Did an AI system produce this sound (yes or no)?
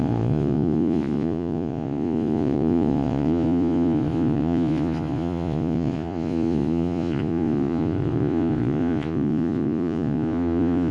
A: yes